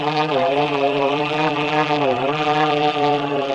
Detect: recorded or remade remade